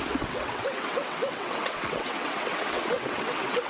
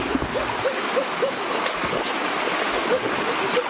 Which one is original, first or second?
second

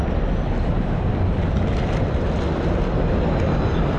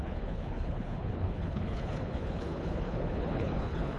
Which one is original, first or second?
first